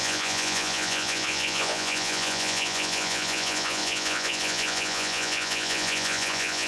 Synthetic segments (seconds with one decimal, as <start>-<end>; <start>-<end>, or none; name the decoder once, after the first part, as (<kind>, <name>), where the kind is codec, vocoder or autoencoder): 0.0-6.7 (vocoder, Vocos)